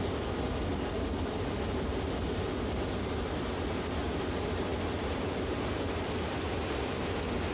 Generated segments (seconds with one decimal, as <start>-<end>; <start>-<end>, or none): none